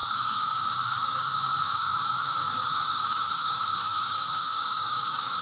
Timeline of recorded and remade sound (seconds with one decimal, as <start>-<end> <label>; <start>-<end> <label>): 0.0-5.4 remade